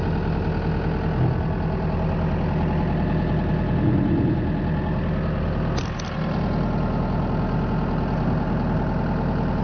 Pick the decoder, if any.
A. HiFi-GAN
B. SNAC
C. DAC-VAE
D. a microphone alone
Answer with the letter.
D